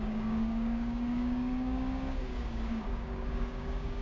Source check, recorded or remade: remade